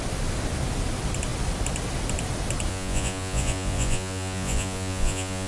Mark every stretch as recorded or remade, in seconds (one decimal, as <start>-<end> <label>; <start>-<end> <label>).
0.0-2.7 recorded; 2.7-5.5 remade

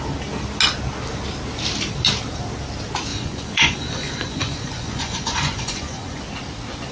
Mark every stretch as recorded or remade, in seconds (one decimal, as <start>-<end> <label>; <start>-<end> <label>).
0.0-3.1 recorded; 3.1-6.2 remade; 6.2-6.9 recorded

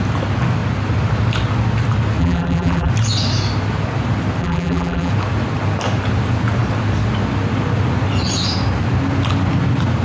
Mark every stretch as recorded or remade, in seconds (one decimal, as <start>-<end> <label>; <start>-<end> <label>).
0.0-2.2 recorded; 2.2-2.9 remade; 2.9-4.4 recorded; 4.4-5.1 remade; 5.1-10.0 recorded